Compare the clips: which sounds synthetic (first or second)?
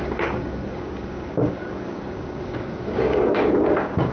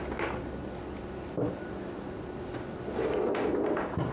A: first